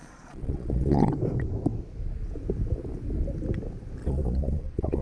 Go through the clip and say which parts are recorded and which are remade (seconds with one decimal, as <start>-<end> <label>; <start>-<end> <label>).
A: 0.0-1.1 remade; 1.1-4.0 recorded; 4.0-5.0 remade